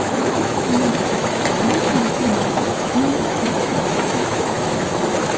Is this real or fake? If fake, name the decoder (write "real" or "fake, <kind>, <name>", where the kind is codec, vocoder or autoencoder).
fake, autoencoder, DAC-VAE